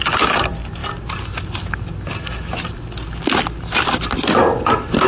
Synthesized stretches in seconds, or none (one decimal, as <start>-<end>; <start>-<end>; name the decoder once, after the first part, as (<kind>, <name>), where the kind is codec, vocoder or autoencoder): none